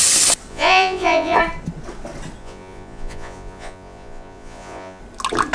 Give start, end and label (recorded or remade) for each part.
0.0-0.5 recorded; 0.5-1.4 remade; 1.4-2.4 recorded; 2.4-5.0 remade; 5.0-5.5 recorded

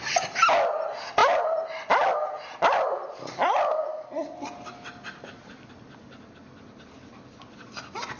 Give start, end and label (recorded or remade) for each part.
0.0-8.2 recorded